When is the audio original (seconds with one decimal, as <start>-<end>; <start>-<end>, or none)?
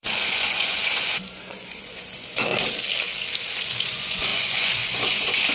2.5-3.5